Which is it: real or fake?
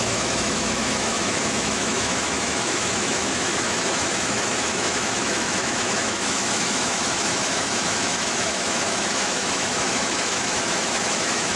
fake